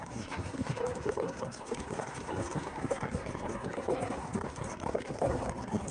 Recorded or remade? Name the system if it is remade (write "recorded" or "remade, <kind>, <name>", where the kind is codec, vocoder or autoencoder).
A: remade, codec, SNAC